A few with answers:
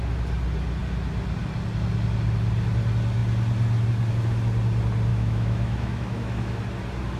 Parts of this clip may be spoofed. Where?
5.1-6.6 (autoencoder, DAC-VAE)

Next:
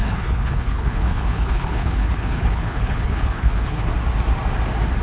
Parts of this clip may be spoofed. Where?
0.0-3.9 (codec, HILCodec)

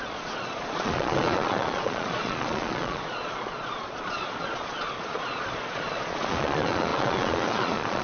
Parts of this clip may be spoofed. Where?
0.0-8.0 (vocoder, Vocos)

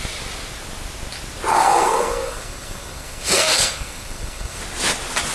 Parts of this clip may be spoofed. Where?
1.5-4.6 (codec, SNAC)

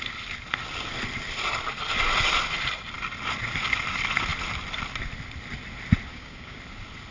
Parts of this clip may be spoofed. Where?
6.1-6.6 (codec, DAC)